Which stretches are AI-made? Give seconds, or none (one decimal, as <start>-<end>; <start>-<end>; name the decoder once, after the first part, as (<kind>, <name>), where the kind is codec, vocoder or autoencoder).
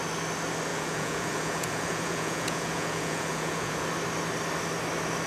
0.7-3.9 (vocoder, Vocos)